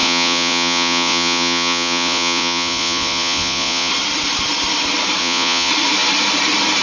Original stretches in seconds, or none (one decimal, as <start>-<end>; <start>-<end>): 3.9-5.2; 5.7-6.8